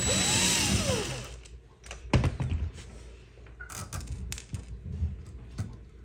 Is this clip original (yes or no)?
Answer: yes